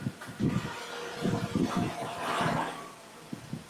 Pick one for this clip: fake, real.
fake